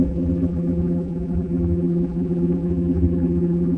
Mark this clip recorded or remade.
remade